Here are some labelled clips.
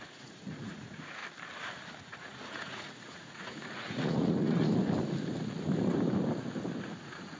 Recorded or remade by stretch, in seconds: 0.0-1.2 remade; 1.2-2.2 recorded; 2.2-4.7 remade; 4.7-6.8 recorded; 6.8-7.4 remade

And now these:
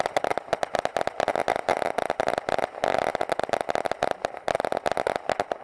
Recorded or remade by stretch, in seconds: 0.0-5.6 recorded